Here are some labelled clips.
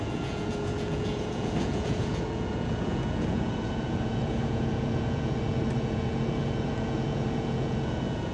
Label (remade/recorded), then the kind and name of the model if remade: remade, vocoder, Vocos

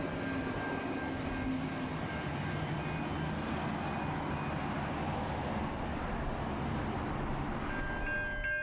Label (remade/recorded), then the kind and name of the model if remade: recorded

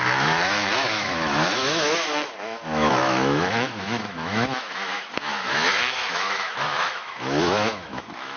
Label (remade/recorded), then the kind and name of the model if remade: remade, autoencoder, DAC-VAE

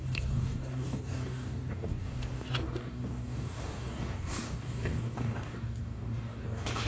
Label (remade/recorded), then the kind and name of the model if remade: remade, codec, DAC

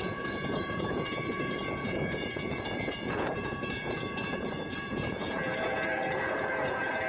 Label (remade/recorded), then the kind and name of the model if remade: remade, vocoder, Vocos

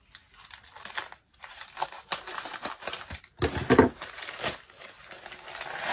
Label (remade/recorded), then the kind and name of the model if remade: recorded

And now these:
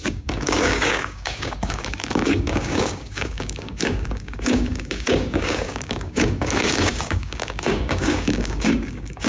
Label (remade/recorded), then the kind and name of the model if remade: remade, codec, DAC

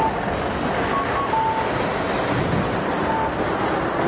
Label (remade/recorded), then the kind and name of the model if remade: recorded